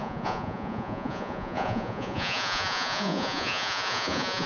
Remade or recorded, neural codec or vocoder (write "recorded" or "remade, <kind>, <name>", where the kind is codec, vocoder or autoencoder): remade, vocoder, Vocos